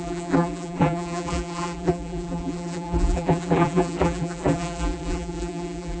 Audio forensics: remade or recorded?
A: remade